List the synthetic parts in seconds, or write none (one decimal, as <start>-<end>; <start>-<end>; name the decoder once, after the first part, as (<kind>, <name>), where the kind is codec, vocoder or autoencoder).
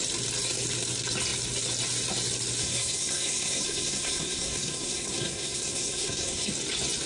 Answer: 2.6-6.5 (codec, SNAC)